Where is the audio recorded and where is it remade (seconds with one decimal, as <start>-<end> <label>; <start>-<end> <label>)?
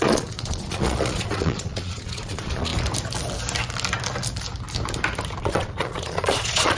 0.0-2.7 remade; 2.7-5.4 recorded; 5.4-6.8 remade